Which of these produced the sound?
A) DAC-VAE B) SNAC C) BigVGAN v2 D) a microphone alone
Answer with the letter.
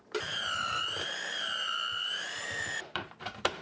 C